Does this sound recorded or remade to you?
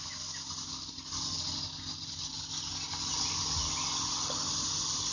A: remade